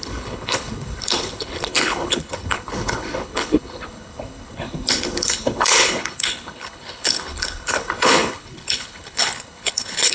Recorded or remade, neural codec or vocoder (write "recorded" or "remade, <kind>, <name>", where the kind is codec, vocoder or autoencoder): remade, codec, HILCodec